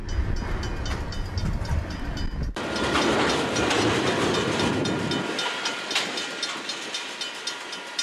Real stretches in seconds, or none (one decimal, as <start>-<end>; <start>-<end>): 0.0-1.4; 4.7-8.0